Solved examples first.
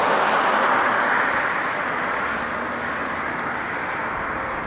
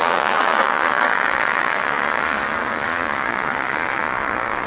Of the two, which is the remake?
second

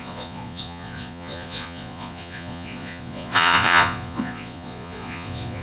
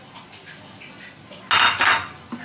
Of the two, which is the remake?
first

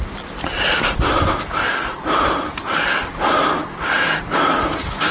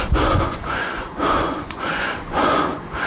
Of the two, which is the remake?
second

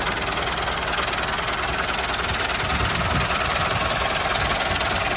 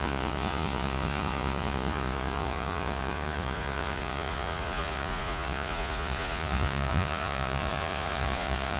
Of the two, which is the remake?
second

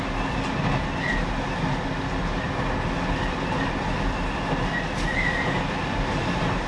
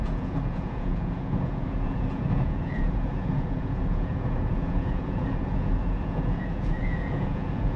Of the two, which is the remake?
second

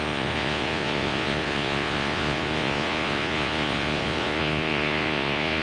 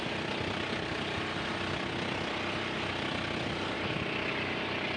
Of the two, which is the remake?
first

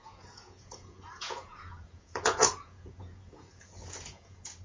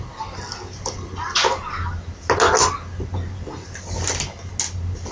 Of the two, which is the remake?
first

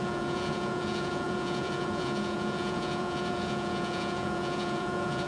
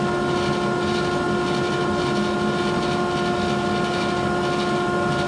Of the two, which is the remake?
first